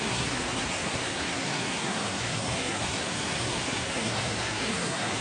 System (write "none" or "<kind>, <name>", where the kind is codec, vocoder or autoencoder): codec, SNAC